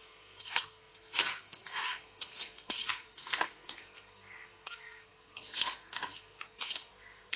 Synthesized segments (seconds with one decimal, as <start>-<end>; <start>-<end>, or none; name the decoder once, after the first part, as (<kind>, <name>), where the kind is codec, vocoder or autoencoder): 0.0-7.4 (codec, SNAC)